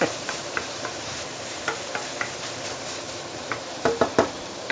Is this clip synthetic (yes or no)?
yes